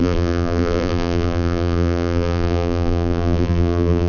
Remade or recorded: remade